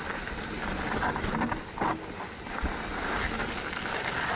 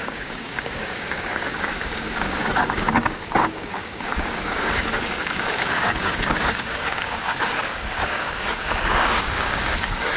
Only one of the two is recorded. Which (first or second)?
first